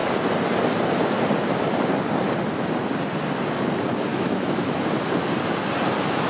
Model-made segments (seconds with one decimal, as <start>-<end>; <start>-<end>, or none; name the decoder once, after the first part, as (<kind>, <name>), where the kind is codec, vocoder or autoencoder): 4.1-4.7 (autoencoder, DAC-VAE)